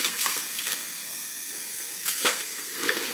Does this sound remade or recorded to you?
remade